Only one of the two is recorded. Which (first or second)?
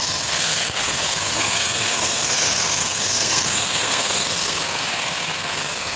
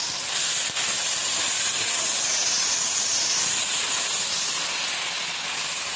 second